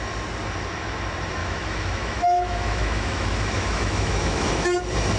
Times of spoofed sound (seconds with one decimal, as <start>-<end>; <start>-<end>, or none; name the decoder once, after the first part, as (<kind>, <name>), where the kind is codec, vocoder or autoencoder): 1.4-4.5 (autoencoder, DAC-VAE)